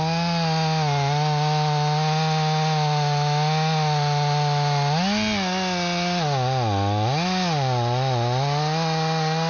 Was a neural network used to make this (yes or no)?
no